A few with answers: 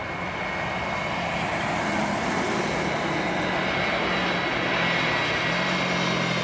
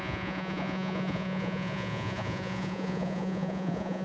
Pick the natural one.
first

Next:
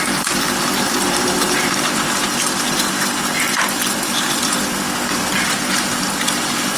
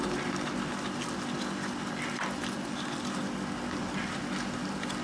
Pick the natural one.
second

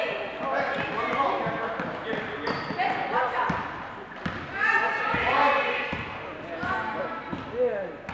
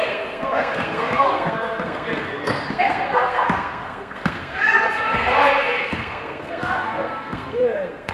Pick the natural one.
first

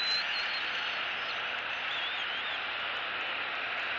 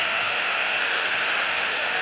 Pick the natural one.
first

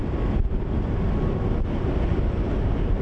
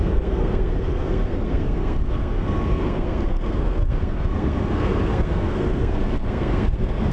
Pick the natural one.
first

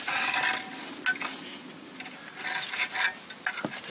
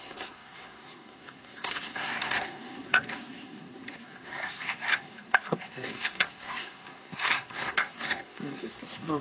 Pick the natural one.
first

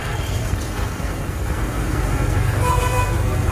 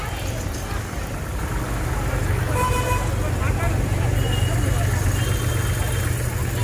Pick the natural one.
second